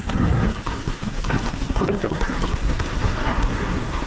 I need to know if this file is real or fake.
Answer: fake